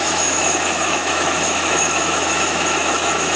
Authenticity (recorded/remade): remade